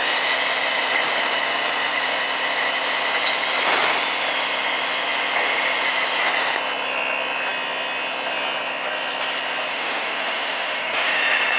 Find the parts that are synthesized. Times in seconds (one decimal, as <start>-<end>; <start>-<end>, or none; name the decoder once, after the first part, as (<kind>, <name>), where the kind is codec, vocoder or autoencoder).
9.7-11.2 (autoencoder, DAC-VAE)